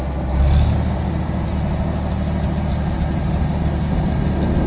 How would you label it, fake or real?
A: real